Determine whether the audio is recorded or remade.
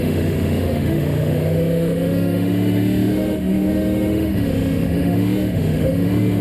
remade